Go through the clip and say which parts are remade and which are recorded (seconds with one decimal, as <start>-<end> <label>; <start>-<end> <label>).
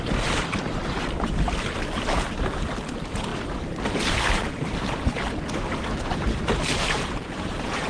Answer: 0.0-7.0 recorded; 7.0-7.9 remade